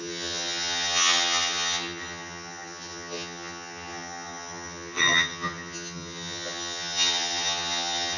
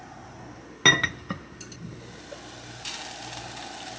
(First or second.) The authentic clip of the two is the second